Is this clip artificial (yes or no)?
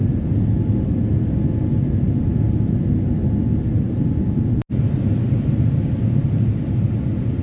no